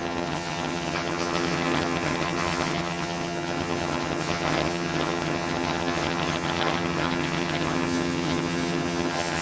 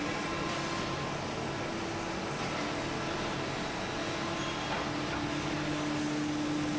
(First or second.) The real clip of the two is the second